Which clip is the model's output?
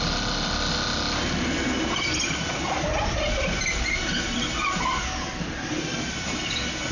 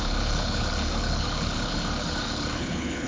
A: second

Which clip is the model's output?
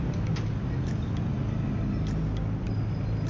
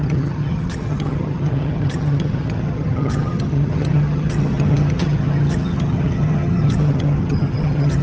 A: second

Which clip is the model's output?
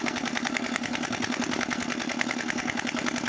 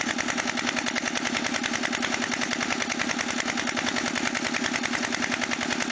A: first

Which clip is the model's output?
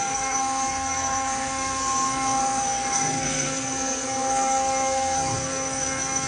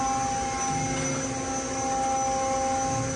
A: first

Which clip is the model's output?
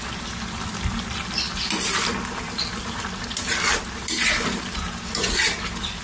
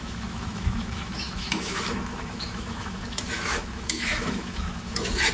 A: second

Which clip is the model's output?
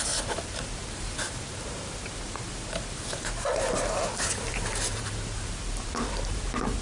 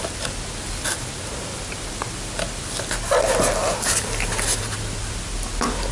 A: first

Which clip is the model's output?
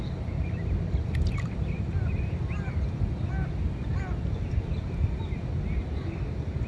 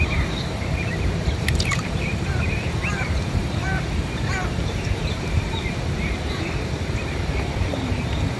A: second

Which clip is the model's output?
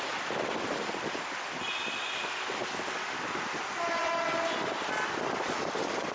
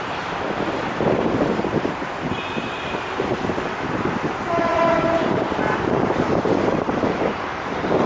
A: second